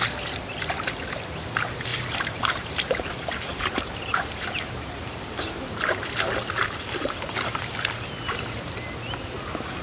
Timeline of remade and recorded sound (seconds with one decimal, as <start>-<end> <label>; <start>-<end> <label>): 0.0-1.9 recorded; 1.9-6.1 remade; 6.1-9.8 recorded